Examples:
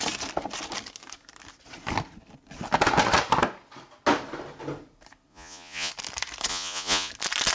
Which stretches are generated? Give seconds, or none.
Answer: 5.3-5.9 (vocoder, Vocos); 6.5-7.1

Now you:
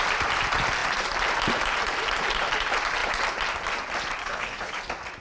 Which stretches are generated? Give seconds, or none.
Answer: 4.2-4.8 (codec, HILCodec)

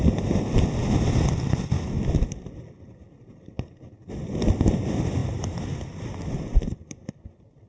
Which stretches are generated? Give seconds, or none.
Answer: 5.2-7.1 (vocoder, BigVGAN v2)

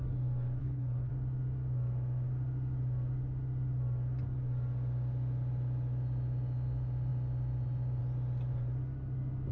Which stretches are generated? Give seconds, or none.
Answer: 0.6-1.1 (codec, HILCodec)

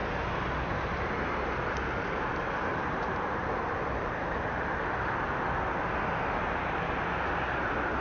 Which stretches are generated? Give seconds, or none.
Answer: 2.7-3.4 (vocoder, BigVGAN v2)